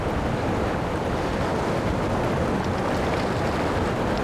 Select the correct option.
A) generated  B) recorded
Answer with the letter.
B